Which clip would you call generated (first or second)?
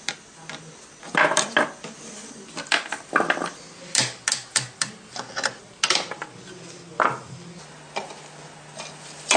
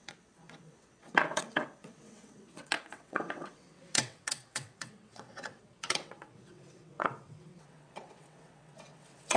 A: second